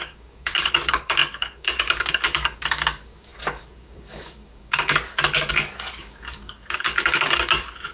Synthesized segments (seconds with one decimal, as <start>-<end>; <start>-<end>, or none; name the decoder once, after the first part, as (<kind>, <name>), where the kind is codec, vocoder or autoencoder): 0.0-7.9 (codec, DAC)

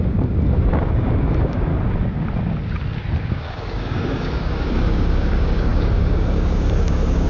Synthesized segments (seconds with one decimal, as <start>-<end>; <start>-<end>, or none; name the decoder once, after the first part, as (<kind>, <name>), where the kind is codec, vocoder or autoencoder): 0.0-1.7 (codec, DAC); 3.2-7.3

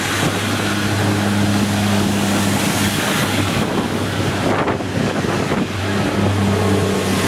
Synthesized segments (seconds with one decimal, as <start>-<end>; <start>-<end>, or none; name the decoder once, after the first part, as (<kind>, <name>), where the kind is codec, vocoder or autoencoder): 1.5-4.3 (codec, DAC); 5.0-5.8

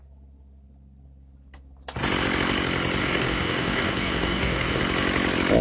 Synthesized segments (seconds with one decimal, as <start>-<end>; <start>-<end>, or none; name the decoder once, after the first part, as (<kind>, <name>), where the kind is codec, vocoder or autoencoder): 3.0-4.8 (codec, DAC)

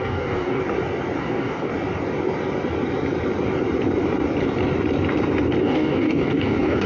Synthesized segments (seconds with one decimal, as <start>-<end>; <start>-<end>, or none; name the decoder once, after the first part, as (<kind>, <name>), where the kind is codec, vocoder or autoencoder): 0.0-0.6 (codec, DAC); 1.2-1.7; 5.6-6.9